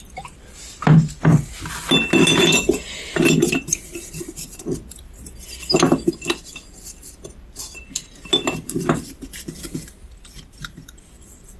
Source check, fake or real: real